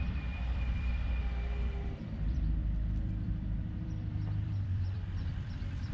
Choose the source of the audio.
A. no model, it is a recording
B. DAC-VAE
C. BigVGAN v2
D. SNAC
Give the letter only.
C